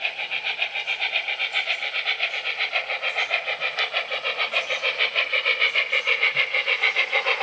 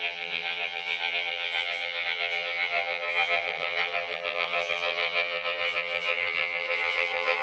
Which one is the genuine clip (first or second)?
first